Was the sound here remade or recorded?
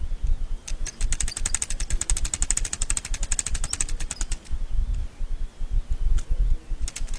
recorded